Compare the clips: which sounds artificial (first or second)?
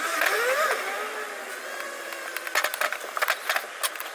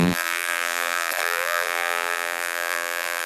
second